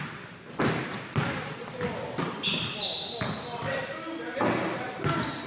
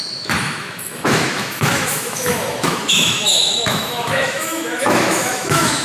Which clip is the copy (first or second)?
second